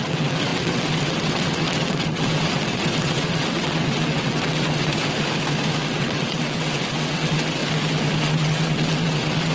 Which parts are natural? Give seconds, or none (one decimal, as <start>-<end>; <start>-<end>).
4.9-5.9; 7.6-8.2